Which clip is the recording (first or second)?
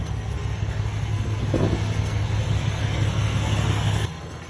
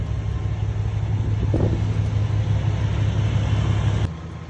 second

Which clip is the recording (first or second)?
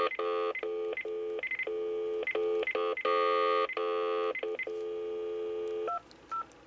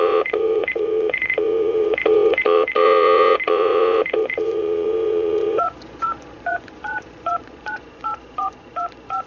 first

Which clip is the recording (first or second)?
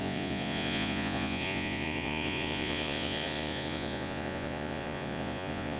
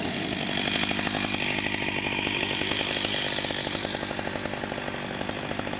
second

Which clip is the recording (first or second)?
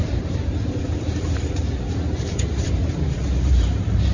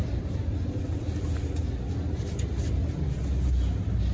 second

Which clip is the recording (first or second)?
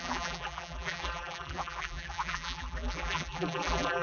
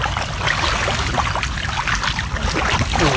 second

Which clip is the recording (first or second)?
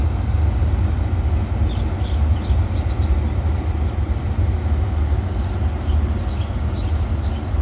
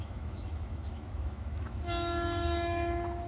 first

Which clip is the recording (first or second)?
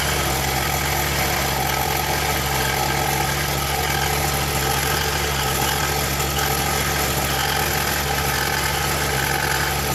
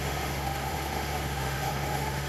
first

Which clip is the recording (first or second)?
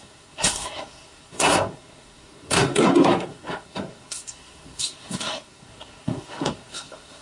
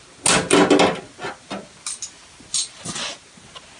second